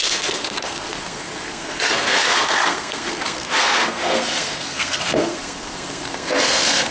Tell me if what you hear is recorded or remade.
remade